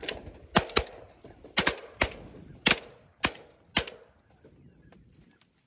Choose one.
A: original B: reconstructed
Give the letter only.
A